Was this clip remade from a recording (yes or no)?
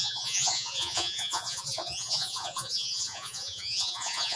yes